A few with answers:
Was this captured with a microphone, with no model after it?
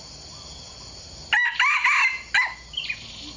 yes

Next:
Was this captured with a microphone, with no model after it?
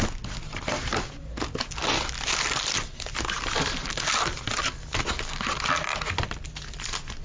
yes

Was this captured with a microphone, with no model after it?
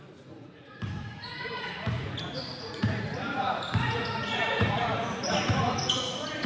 no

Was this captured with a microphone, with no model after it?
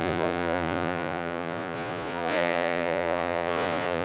no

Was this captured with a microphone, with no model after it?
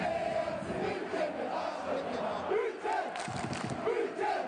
yes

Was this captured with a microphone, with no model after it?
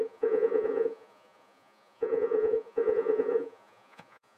no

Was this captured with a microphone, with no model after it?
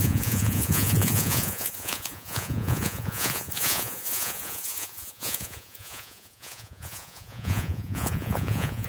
no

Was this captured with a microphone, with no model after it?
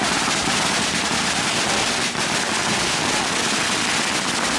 yes